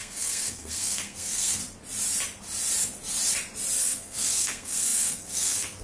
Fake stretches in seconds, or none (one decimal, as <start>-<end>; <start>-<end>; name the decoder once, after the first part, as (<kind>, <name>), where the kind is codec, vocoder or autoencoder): 0.0-1.6 (codec, SNAC); 3.8-5.8